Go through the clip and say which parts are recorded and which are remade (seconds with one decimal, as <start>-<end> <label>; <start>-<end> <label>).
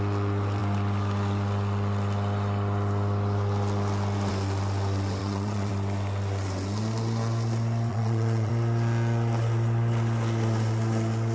0.0-5.2 recorded; 5.2-5.7 remade; 5.7-7.9 recorded; 7.9-8.5 remade; 8.5-11.3 recorded